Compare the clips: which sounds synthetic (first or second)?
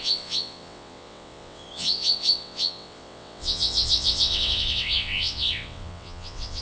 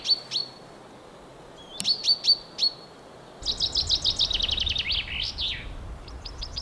first